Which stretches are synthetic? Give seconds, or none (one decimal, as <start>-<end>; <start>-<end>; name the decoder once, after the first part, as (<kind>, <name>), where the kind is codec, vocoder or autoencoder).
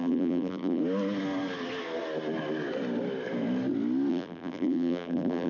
0.0-0.8 (vocoder, BigVGAN v2); 4.1-5.5